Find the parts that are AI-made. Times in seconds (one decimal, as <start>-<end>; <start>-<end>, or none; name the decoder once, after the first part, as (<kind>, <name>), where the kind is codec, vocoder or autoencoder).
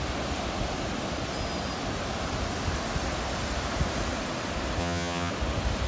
4.8-5.3 (vocoder, HiFi-GAN)